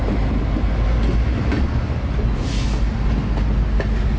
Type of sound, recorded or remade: recorded